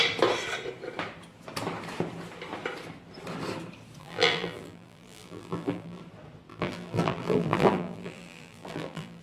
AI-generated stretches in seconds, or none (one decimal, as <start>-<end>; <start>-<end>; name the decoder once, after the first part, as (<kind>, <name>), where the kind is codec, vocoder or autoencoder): 4.0-6.0 (vocoder, BigVGAN v2); 6.5-9.2